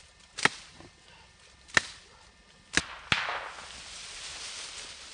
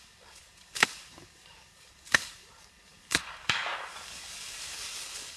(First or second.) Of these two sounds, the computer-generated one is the second